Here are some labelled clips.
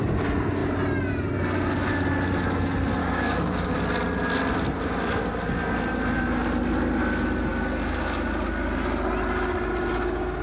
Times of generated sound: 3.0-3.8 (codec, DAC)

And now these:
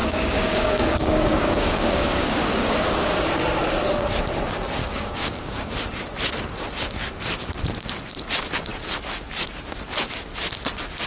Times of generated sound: 0.0-3.3 (codec, DAC); 4.8-5.6

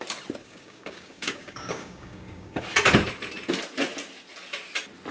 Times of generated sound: 0.4-2.6 (codec, DAC)

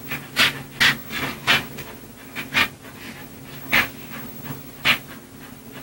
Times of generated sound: none

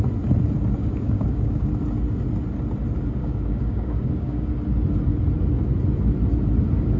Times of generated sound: 0.8-1.7 (codec, DAC); 3.2-4.5

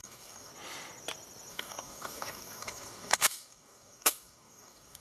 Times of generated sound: 0.0-0.5 (codec, DAC); 1.5-5.0